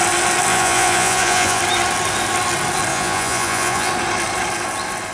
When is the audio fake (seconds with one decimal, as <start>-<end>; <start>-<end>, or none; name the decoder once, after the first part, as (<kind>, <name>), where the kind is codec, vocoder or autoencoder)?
0.5-1.6 (vocoder, Vocos); 2.9-3.9

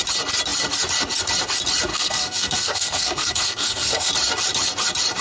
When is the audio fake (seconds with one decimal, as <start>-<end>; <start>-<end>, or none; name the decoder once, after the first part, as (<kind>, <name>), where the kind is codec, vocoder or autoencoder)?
1.9-4.1 (codec, SNAC)

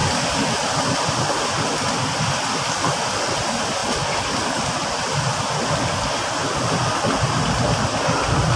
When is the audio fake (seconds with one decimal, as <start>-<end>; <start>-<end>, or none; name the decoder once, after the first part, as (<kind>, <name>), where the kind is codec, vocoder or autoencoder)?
0.0-8.6 (vocoder, BigVGAN v2)

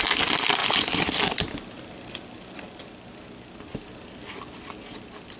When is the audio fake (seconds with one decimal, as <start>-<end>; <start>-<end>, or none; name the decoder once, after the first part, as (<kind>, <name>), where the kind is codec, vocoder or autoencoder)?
none